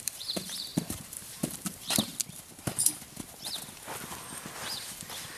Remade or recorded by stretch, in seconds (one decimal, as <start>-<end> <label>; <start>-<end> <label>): 0.0-2.1 remade; 2.1-5.4 recorded